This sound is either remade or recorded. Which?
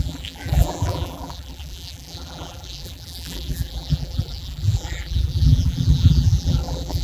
remade